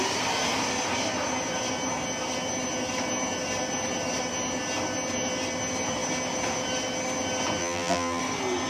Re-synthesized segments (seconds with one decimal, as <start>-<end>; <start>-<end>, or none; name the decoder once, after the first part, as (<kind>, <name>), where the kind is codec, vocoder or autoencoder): 7.6-8.2 (vocoder, BigVGAN v2)